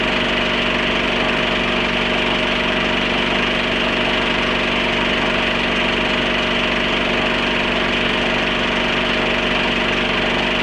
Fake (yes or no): no